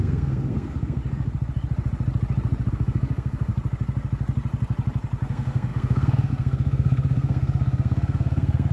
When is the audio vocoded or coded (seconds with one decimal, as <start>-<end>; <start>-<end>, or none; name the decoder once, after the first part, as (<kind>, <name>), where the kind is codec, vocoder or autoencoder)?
0.0-1.0 (codec, SNAC); 2.7-3.5; 5.3-8.7